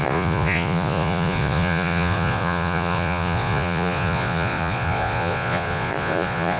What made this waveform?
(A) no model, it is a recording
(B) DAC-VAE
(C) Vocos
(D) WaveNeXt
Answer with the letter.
C